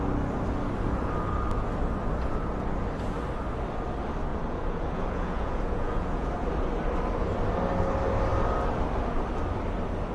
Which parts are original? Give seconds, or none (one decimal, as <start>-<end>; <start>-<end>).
0.0-4.3; 6.3-10.1